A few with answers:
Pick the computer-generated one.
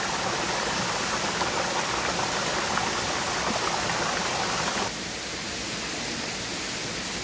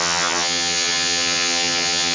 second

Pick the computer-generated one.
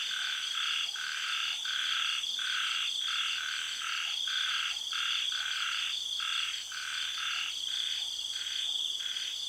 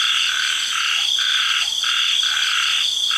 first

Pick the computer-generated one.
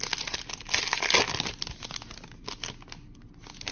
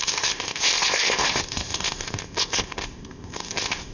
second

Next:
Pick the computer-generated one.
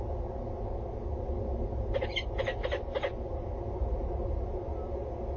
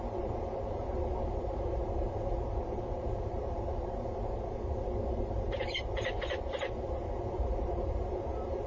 second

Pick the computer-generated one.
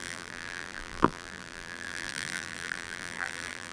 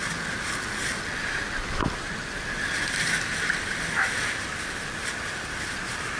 first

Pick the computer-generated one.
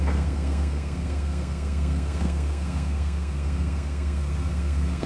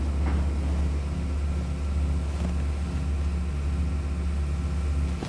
first